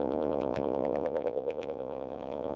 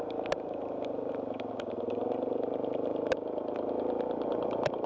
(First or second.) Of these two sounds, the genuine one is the second